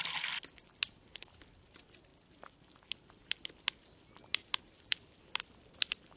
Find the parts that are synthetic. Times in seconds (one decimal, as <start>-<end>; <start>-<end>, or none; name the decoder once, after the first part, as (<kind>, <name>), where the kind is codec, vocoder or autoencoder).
none